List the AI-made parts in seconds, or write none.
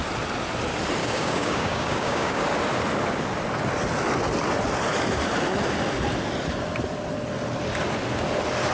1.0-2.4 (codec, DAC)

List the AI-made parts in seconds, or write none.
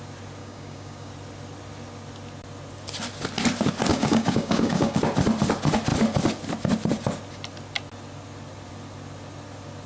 0.4-1.1 (codec, DAC); 3.9-5.0